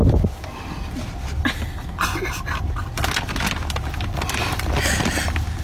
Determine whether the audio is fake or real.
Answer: real